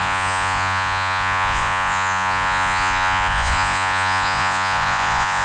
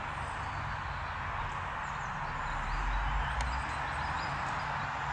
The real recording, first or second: second